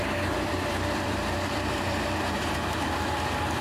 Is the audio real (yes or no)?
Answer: no